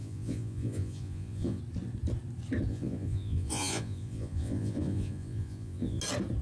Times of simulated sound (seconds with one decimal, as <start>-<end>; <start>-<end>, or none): 0.0-1.6; 2.7-6.0